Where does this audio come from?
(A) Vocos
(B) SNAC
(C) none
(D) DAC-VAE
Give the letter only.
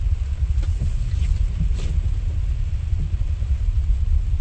C